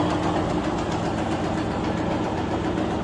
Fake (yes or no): no